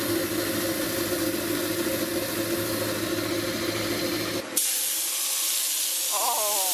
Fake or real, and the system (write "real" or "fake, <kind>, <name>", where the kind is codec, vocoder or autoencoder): real